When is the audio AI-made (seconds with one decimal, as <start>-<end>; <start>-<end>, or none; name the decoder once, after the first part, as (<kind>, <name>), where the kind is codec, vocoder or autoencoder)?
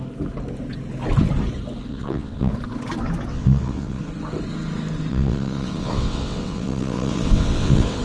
1.9-2.5 (vocoder, WaveNeXt); 3.3-4.0; 5.1-8.0